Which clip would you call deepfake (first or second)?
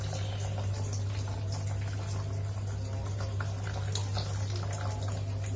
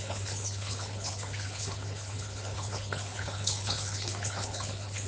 second